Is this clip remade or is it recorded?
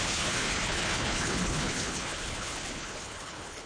remade